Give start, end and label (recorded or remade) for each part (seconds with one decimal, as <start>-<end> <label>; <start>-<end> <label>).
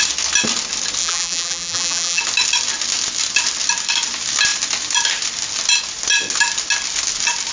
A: 0.0-1.0 recorded; 1.0-2.2 remade; 2.2-7.5 recorded